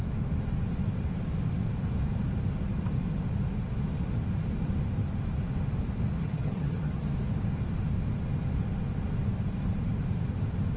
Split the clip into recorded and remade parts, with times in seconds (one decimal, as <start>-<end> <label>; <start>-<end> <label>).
0.0-6.2 recorded; 6.2-7.1 remade; 7.1-10.8 recorded